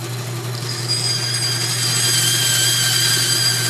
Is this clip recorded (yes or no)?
yes